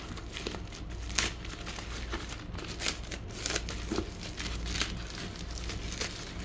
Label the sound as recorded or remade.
recorded